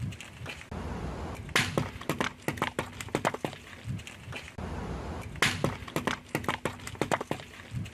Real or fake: real